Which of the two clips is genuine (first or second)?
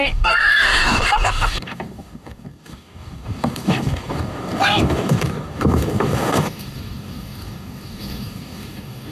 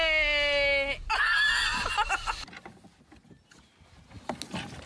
second